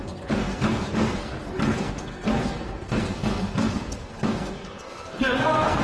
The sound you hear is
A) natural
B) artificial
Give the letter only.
B